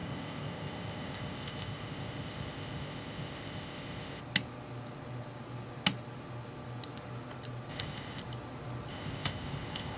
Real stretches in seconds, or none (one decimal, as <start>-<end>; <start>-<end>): 4.2-7.7; 8.2-8.9